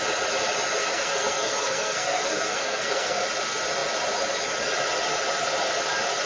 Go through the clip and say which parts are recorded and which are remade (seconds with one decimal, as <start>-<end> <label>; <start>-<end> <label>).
0.0-0.8 recorded; 0.8-3.2 remade; 3.2-6.3 recorded